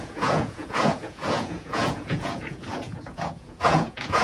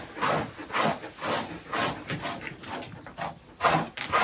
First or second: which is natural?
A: second